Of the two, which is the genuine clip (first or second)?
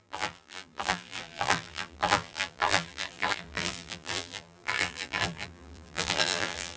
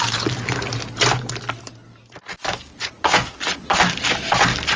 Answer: second